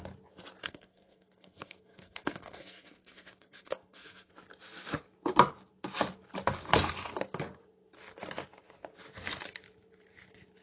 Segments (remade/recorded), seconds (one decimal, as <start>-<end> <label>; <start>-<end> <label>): 0.0-0.6 recorded; 0.6-4.3 remade; 4.3-10.6 recorded